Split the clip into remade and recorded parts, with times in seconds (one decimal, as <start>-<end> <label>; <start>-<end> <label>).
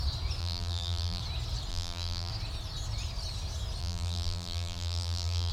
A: 0.0-0.4 recorded; 0.4-1.2 remade; 1.2-1.7 recorded; 1.7-2.3 remade; 2.3-3.8 recorded; 3.8-5.5 remade